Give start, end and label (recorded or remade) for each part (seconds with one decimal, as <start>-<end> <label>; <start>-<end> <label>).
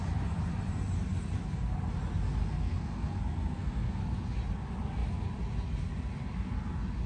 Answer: 0.0-2.4 recorded; 2.4-4.0 remade; 4.0-7.1 recorded